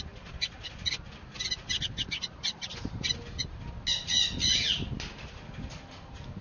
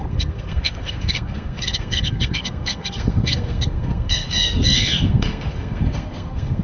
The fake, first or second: second